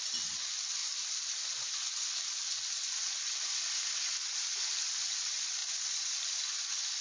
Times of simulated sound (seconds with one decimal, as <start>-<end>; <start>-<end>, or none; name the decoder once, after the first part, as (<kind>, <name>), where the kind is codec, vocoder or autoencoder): none